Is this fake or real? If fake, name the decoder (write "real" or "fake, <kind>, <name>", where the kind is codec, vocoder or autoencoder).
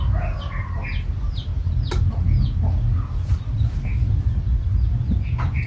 real